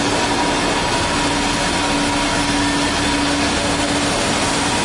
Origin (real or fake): real